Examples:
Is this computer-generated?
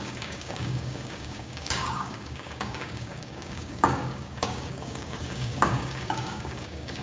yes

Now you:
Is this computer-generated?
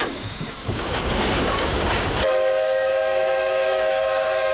yes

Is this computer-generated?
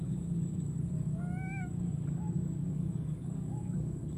yes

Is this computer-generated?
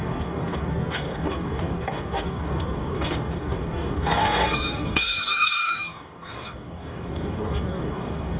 yes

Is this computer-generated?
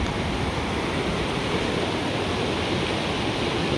no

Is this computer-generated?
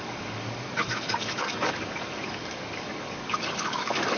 yes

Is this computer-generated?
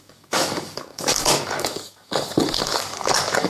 yes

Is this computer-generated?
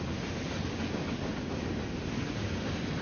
no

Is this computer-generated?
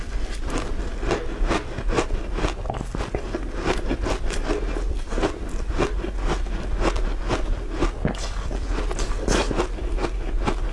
no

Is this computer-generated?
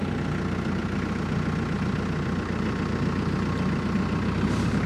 no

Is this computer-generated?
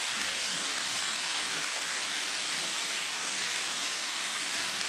yes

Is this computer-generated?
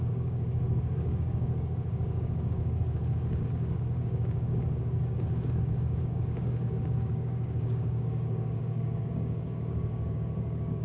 yes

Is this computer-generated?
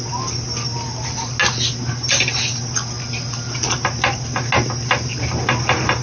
no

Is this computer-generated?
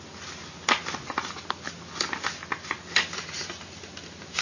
no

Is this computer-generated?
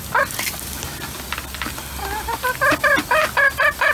no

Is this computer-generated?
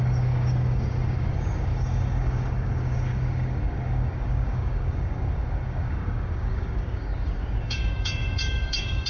yes